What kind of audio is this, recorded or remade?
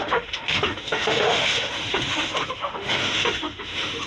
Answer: remade